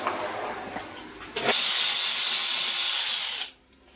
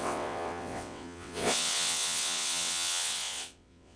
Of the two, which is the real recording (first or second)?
first